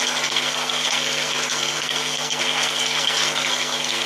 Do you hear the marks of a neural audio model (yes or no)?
yes